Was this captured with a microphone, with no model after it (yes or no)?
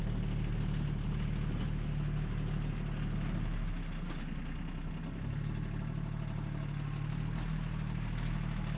yes